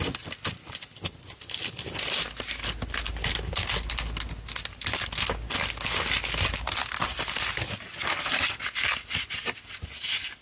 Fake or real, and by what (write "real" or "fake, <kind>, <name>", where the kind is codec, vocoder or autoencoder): real